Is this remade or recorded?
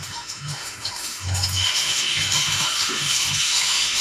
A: remade